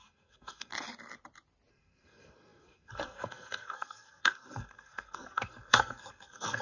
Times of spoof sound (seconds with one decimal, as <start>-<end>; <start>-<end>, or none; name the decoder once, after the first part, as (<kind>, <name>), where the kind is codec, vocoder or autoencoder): 0.0-0.7 (codec, SNAC); 1.7-6.6

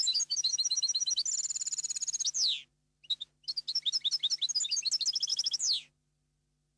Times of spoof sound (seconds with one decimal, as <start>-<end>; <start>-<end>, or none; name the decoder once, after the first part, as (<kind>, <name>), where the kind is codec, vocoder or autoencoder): 0.5-1.1 (autoencoder, DAC-VAE); 5.3-5.9

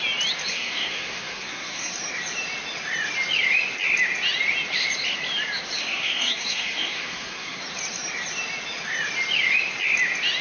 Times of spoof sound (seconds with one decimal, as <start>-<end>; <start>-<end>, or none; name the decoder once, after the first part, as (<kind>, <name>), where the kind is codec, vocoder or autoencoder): 0.5-1.9 (codec, SNAC); 5.8-7.6

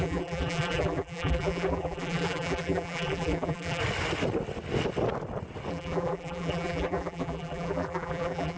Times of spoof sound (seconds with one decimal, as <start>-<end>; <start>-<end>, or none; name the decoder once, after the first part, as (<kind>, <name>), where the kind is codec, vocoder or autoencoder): 0.0-3.8 (vocoder, BigVGAN v2); 5.7-8.6

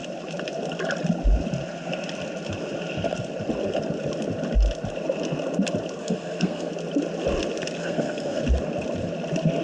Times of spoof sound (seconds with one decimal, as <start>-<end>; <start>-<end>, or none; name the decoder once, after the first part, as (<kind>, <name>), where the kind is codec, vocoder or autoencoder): 6.0-6.7 (codec, SNAC); 7.8-8.4

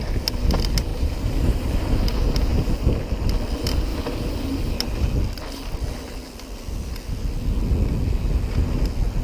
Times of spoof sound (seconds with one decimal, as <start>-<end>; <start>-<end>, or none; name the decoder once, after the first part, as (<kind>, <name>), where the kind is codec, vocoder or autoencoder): 0.9-1.7 (vocoder, BigVGAN v2)

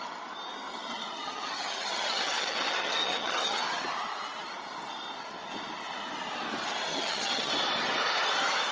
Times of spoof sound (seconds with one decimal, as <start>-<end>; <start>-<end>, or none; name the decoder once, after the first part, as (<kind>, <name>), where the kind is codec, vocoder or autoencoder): 0.7-3.6 (vocoder, HiFi-GAN); 6.9-7.5